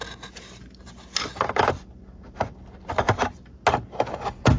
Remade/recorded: recorded